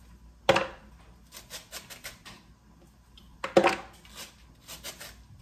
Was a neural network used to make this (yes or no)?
no